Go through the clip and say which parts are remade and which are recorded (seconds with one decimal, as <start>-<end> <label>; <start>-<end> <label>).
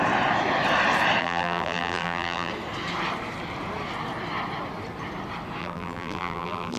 0.0-1.2 recorded; 1.2-2.5 remade; 2.5-5.6 recorded; 5.6-6.8 remade